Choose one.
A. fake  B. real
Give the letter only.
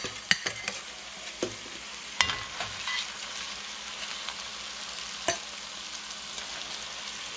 B